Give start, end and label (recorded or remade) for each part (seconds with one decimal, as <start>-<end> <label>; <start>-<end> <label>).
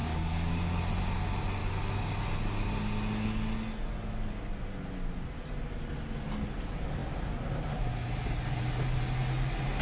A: 0.0-0.6 remade; 0.6-9.8 recorded